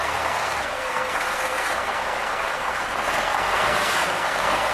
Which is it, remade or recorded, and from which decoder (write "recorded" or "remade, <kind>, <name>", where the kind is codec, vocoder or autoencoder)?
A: remade, codec, SNAC